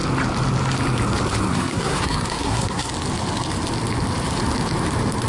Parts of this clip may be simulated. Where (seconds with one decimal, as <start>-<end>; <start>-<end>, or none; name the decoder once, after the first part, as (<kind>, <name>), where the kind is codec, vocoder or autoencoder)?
1.5-2.9 (codec, SNAC)